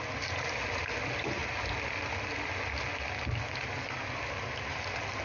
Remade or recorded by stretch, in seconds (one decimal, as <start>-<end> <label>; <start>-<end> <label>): 0.0-5.2 recorded